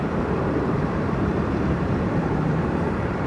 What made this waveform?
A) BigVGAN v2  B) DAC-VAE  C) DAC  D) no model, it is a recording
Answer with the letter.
A